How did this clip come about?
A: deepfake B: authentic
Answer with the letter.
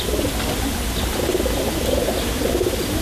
B